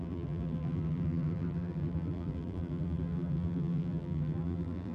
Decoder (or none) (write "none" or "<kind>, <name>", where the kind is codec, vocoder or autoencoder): vocoder, BigVGAN v2